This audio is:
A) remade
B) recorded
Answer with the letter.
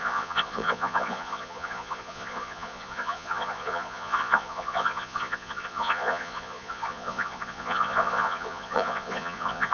A